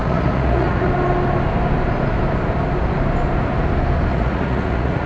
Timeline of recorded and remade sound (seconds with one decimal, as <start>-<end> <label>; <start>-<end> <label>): 0.0-0.9 remade; 0.9-4.1 recorded; 4.1-5.1 remade